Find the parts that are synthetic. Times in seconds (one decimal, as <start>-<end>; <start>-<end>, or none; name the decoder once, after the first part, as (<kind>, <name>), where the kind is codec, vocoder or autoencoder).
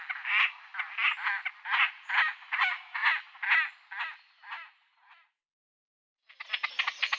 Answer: 0.0-3.0 (vocoder, BigVGAN v2); 6.5-7.2